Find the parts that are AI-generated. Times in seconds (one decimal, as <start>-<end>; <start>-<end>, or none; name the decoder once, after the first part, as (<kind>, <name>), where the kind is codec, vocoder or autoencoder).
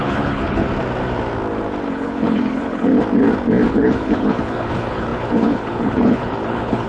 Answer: 0.0-0.6 (codec, HILCodec); 1.9-2.9; 3.7-6.9